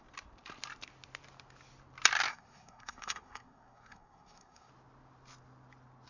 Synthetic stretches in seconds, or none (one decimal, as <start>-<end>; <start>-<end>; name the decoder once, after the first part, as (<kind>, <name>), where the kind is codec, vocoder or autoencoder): 2.3-4.7 (codec, SNAC)